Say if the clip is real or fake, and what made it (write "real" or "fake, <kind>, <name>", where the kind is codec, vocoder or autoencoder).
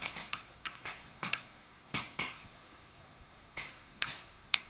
fake, codec, SNAC